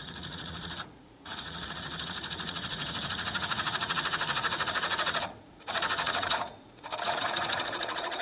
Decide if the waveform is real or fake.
fake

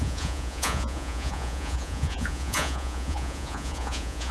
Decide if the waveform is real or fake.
fake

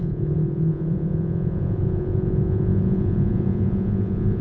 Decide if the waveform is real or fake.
fake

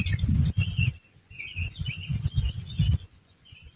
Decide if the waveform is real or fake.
fake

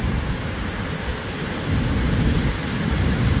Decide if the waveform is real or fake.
real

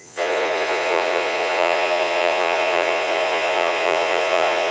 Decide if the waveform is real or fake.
fake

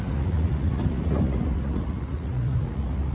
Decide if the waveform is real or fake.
fake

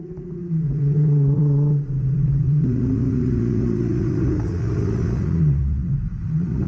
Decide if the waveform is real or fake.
fake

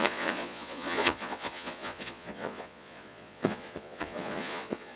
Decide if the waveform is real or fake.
fake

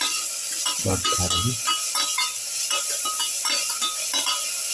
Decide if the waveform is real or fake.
real